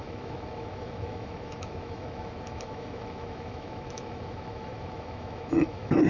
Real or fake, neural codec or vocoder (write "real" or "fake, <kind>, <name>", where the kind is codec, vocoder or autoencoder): fake, autoencoder, DAC-VAE